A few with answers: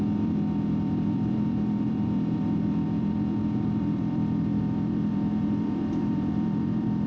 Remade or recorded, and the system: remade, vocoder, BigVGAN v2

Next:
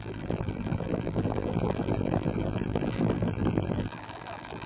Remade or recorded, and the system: remade, vocoder, BigVGAN v2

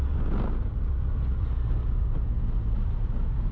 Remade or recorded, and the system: recorded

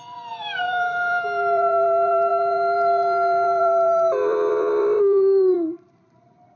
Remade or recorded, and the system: remade, vocoder, BigVGAN v2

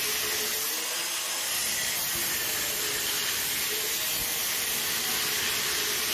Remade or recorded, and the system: recorded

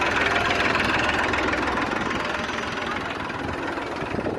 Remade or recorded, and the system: recorded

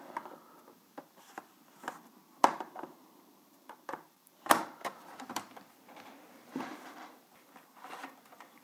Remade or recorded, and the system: remade, vocoder, BigVGAN v2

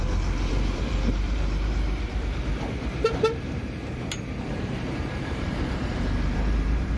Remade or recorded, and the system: remade, vocoder, BigVGAN v2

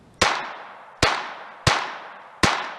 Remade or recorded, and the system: recorded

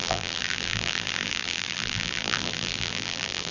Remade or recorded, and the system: remade, vocoder, BigVGAN v2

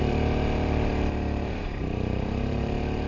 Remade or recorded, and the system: remade, vocoder, BigVGAN v2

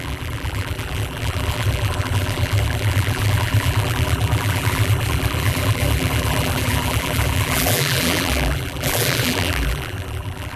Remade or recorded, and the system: remade, vocoder, BigVGAN v2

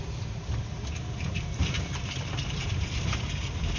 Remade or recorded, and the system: remade, vocoder, BigVGAN v2